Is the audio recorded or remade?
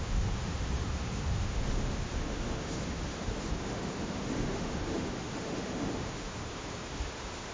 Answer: remade